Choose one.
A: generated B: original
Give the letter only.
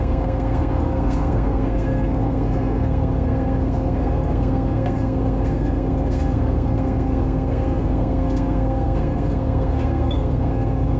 A